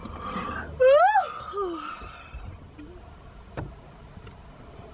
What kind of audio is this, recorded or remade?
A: recorded